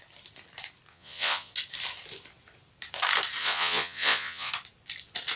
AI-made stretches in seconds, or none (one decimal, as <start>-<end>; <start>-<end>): 0.9-1.5; 3.4-4.5